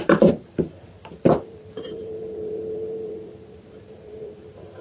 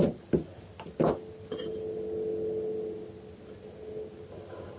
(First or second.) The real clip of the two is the second